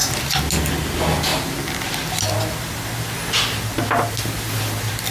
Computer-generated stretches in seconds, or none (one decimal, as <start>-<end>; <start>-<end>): none